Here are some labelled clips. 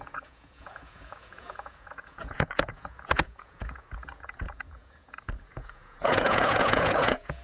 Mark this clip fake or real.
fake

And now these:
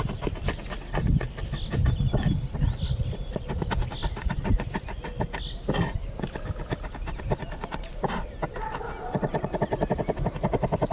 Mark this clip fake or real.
real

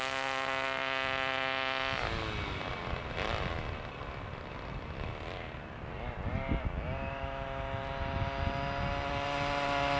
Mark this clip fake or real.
real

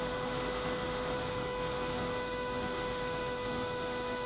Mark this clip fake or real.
fake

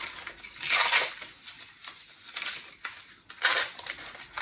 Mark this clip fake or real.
real